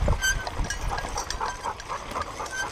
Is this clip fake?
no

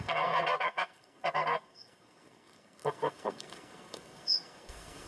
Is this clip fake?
yes